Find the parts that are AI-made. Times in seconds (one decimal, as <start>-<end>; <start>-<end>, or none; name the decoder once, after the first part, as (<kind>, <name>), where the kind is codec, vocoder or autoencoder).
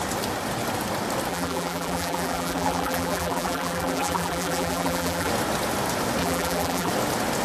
1.3-5.3 (vocoder, BigVGAN v2); 6.2-6.9